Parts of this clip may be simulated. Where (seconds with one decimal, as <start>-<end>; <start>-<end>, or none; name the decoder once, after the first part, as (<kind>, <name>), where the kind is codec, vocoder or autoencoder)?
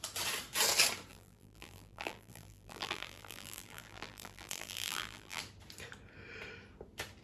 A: 1.1-5.4 (vocoder, BigVGAN v2)